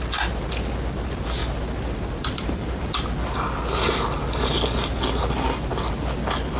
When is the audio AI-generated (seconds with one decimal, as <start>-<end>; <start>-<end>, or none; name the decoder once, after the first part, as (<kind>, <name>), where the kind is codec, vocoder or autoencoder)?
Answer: none

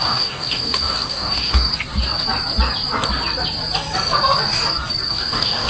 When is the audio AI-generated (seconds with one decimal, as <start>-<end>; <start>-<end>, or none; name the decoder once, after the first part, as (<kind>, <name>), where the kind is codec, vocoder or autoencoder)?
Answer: 0.0-1.7 (codec, DAC); 5.1-5.7

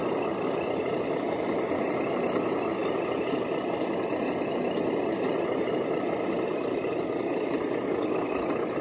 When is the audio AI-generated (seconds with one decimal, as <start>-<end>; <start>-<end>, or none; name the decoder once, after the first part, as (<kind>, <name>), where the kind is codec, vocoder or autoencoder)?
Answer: none

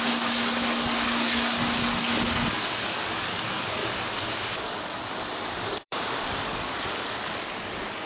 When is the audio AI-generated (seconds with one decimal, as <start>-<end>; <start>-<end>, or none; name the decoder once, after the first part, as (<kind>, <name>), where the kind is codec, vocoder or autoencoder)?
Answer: 0.0-3.8 (codec, DAC); 4.6-8.1

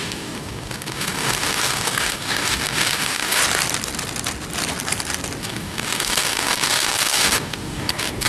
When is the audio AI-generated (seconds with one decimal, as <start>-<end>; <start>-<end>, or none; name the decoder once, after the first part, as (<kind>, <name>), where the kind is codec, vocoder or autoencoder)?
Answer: 0.0-3.4 (codec, DAC); 5.4-8.3

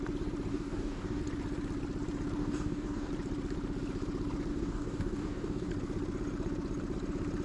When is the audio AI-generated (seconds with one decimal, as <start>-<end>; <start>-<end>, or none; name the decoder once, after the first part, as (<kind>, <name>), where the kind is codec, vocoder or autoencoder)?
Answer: 0.5-1.2 (codec, DAC); 2.4-3.1; 4.5-5.7

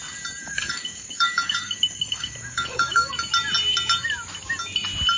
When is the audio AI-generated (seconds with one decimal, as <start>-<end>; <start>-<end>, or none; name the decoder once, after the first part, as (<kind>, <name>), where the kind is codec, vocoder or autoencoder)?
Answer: 0.4-3.1 (codec, DAC)

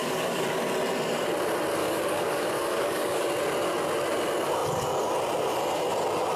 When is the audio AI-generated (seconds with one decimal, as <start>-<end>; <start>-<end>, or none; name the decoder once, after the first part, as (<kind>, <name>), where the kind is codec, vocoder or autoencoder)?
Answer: 0.0-0.6 (codec, DAC); 1.8-3.3